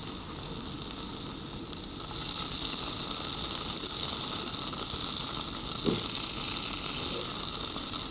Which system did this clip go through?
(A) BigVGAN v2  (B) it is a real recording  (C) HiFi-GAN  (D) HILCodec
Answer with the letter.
B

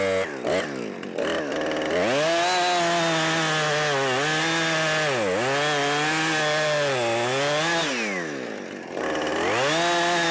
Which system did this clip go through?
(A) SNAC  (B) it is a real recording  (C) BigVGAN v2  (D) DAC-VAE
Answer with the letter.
B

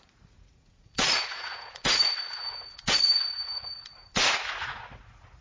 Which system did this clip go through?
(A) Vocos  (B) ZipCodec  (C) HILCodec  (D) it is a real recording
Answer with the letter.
A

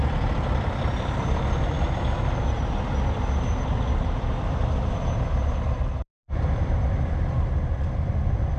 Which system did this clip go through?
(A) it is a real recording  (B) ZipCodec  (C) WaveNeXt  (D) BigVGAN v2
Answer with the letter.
D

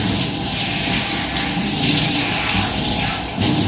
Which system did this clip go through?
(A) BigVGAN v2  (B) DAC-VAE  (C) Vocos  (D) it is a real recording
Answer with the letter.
D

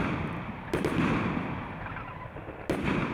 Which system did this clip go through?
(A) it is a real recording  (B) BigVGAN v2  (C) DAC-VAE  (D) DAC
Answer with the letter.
A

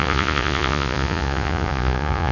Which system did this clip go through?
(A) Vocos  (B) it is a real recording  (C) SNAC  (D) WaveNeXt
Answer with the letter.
A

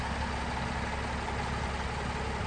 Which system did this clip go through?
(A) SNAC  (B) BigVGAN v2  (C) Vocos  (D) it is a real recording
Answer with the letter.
D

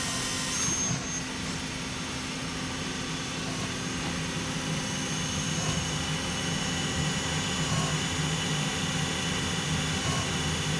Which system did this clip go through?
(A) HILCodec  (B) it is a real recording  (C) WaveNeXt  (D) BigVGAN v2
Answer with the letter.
B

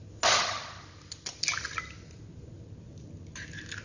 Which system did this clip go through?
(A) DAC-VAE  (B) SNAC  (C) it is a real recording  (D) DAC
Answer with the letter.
C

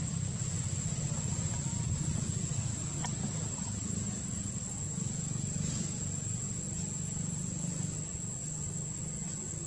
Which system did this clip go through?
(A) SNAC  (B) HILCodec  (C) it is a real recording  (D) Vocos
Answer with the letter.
C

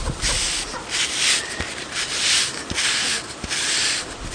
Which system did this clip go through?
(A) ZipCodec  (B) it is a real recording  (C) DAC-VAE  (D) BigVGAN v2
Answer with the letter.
B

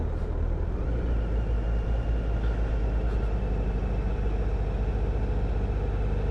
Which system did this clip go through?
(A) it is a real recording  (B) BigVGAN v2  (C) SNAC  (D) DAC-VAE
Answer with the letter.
A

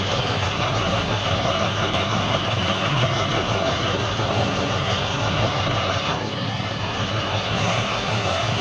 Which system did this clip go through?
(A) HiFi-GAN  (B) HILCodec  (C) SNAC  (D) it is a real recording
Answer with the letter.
C